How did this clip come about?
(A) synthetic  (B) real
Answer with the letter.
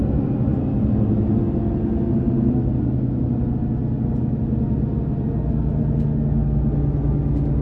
B